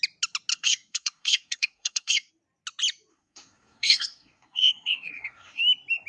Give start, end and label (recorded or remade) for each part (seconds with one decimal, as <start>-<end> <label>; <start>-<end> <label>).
0.0-0.5 recorded; 0.5-2.3 remade; 2.3-3.1 recorded; 3.1-5.6 remade; 5.6-6.1 recorded